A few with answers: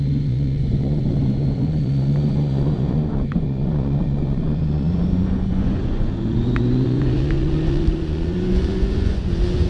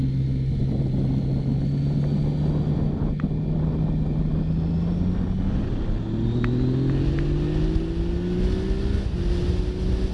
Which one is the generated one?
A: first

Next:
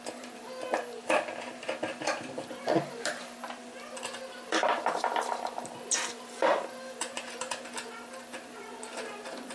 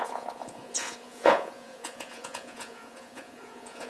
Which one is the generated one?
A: second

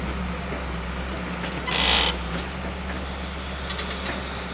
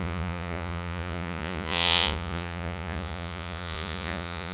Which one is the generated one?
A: second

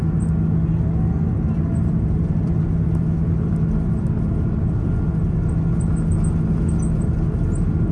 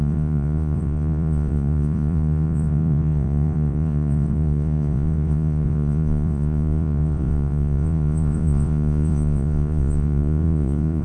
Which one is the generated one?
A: second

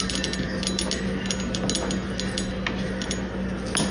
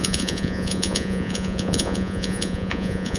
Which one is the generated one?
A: second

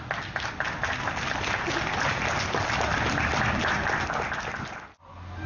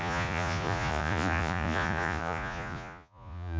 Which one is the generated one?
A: second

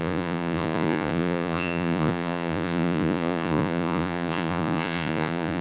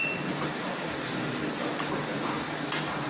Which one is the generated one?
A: first